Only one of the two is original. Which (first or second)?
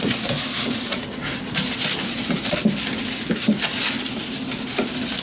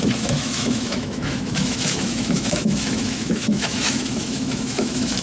first